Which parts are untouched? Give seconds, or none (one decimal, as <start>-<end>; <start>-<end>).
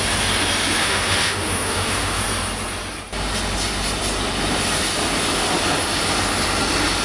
0.0-0.8; 2.2-7.0